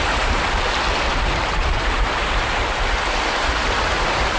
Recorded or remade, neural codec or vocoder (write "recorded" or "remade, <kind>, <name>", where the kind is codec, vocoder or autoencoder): recorded